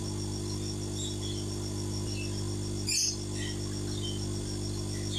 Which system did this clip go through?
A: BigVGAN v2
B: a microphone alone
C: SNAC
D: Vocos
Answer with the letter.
B